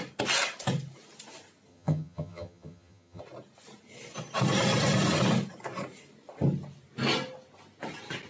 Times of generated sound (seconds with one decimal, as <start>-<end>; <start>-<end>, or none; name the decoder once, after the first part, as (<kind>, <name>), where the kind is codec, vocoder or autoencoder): 1.7-3.2 (vocoder, HiFi-GAN)